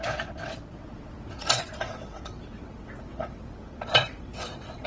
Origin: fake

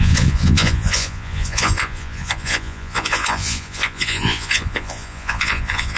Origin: fake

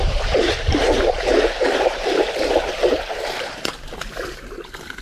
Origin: fake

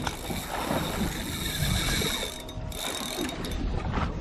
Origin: real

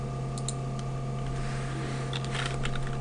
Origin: real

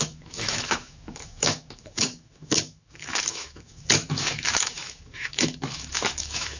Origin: fake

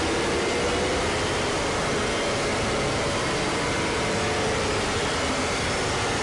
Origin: real